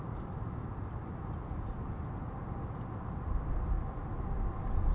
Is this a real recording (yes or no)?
yes